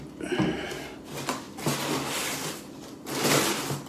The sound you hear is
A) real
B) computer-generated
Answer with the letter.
A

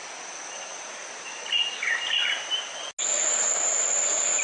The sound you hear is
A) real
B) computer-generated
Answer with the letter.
A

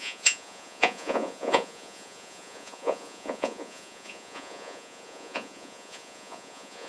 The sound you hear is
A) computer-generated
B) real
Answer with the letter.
A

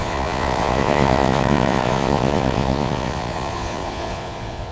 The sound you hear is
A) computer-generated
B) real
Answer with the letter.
A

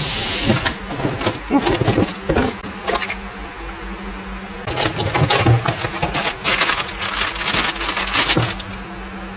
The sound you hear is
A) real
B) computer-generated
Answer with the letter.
A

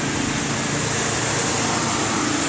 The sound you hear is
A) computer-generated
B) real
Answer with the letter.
B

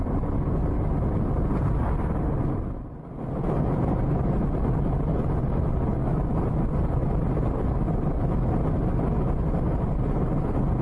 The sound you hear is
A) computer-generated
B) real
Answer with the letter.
B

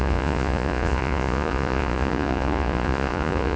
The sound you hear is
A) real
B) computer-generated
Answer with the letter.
B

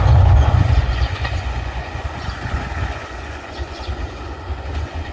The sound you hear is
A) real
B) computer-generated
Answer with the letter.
B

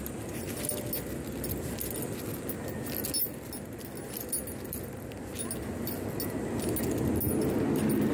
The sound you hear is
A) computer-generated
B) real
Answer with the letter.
B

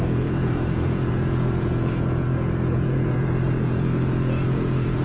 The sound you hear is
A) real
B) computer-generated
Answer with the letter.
B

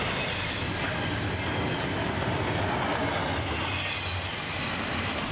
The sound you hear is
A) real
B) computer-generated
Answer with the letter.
A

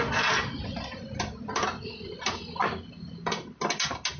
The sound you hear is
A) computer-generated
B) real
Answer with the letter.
B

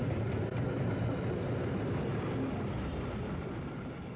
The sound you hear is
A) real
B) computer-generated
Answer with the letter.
A